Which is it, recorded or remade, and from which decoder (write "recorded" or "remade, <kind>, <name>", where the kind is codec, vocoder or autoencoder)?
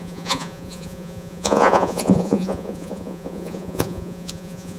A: remade, vocoder, Vocos